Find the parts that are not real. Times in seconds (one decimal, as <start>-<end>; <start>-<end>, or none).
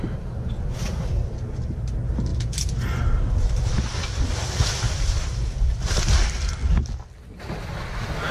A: none